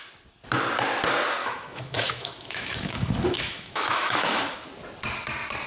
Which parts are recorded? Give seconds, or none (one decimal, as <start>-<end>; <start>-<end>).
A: 0.0-1.4; 4.4-5.7